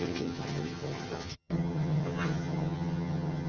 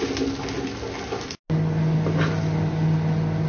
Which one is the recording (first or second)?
second